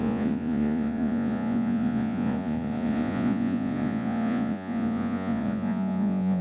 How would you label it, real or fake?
fake